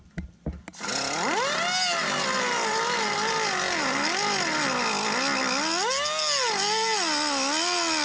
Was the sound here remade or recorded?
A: recorded